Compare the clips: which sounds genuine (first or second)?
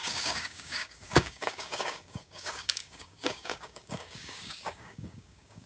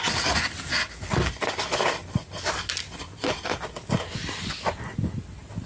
second